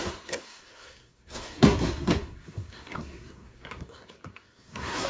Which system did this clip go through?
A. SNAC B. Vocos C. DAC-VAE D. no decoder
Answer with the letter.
A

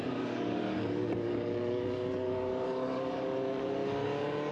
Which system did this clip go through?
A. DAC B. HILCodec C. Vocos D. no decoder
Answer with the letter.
A